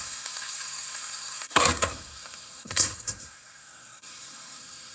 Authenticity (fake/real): fake